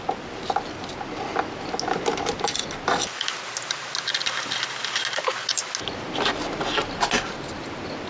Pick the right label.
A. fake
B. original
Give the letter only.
B